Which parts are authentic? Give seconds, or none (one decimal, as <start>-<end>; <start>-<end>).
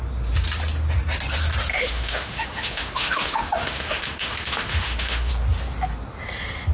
0.0-1.7; 5.3-6.7